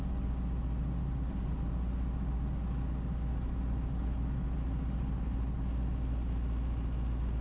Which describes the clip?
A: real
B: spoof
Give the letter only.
A